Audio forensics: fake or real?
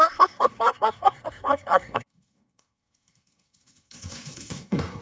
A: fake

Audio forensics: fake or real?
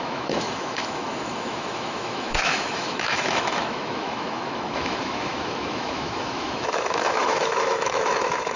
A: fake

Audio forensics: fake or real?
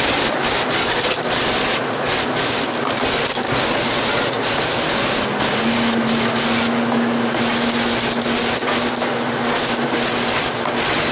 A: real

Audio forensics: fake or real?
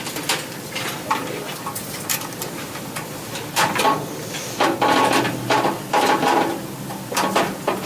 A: fake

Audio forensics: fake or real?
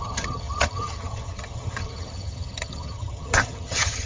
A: fake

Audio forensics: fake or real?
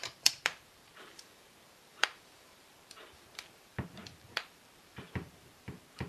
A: fake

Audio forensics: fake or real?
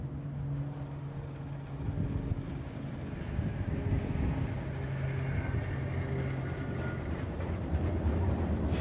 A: real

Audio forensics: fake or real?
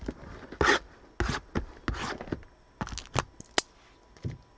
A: real